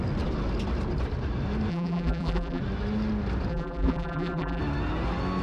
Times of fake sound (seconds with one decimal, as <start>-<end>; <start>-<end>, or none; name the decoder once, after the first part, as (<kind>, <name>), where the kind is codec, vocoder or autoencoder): 1.7-2.6 (vocoder, BigVGAN v2); 3.5-4.6